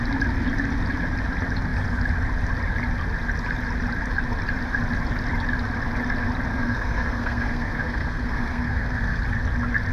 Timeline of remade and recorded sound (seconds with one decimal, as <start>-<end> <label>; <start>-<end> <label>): 0.0-6.5 recorded; 6.5-9.2 remade; 9.2-9.9 recorded